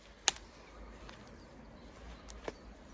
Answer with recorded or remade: recorded